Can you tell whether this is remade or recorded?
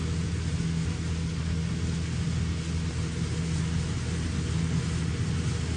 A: recorded